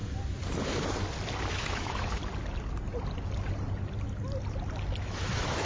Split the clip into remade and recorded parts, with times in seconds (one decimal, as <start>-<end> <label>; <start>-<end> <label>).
0.0-1.5 recorded; 1.5-2.2 remade; 2.2-5.0 recorded; 5.0-5.7 remade